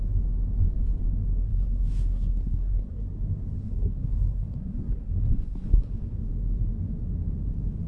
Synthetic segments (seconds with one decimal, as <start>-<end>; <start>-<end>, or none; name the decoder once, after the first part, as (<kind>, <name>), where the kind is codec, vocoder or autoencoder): 1.4-3.0 (codec, SNAC); 3.6-5.9